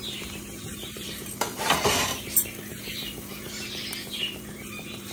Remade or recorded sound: remade